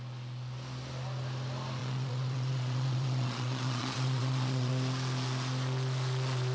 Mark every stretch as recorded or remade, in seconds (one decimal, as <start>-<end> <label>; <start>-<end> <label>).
0.0-1.8 recorded; 1.8-4.7 remade; 4.7-6.5 recorded